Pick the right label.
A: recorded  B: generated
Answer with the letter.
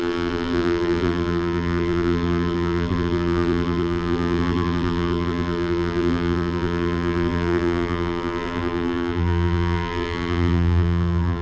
B